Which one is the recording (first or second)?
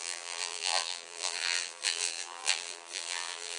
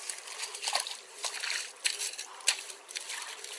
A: second